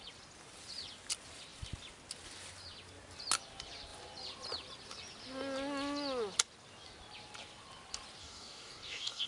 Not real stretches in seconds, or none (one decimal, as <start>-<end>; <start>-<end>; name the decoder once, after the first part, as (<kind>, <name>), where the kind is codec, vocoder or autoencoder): 8.2-9.3 (codec, DAC)